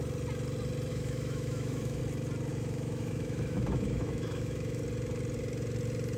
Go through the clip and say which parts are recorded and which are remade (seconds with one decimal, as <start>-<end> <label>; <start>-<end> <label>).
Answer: 0.0-0.9 recorded; 0.9-2.0 remade; 2.0-2.5 recorded; 2.5-4.8 remade; 4.8-6.2 recorded